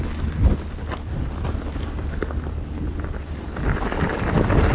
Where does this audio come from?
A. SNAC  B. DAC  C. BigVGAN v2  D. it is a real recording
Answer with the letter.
D